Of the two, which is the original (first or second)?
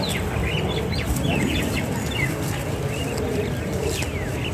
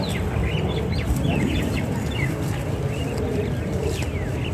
first